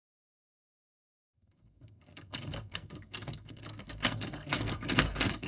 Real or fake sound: fake